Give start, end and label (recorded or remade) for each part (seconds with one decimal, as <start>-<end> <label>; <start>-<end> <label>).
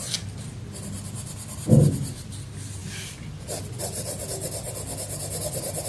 0.0-5.9 recorded